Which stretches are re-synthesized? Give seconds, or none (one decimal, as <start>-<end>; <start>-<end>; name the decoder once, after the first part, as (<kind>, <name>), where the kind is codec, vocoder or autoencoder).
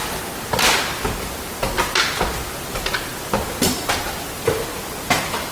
none